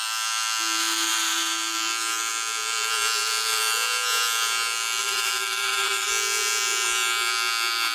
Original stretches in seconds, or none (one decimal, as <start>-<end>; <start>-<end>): 0.0-5.0; 6.1-7.9